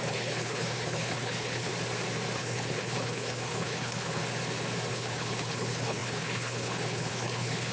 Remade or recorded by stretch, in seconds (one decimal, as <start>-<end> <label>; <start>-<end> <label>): 0.0-1.7 remade; 1.7-2.4 recorded; 2.4-4.2 remade; 4.2-4.9 recorded; 4.9-7.7 remade

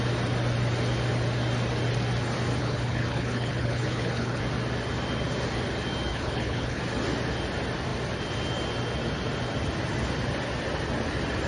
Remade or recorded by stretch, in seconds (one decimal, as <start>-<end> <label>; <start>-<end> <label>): 0.0-2.6 recorded; 2.6-4.4 remade; 4.4-6.1 recorded; 6.1-6.8 remade; 6.8-11.5 recorded

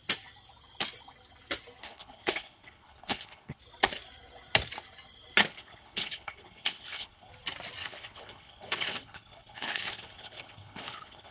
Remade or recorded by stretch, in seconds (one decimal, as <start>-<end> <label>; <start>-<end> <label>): 0.0-1.8 recorded; 1.8-3.6 remade; 3.6-5.5 recorded; 5.5-7.3 remade; 7.3-7.8 recorded; 7.8-11.3 remade

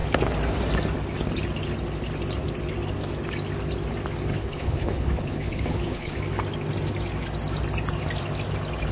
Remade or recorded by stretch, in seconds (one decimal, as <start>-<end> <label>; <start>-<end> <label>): 0.0-4.3 recorded; 4.3-6.2 remade; 6.2-8.9 recorded

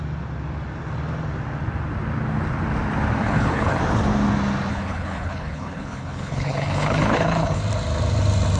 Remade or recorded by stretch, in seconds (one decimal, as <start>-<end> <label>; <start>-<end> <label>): 0.0-3.2 recorded; 3.2-3.8 remade; 3.8-4.7 recorded; 4.7-7.6 remade; 7.6-8.6 recorded

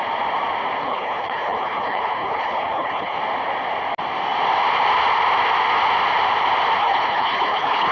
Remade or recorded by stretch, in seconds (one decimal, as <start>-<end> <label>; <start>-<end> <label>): 0.0-0.8 recorded; 0.8-3.2 remade; 3.2-6.8 recorded; 6.8-7.9 remade

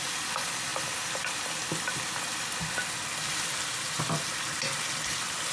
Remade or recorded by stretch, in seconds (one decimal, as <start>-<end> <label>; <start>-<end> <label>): 0.0-5.5 recorded